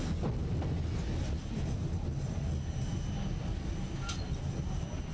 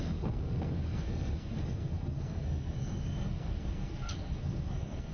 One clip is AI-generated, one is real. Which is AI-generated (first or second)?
second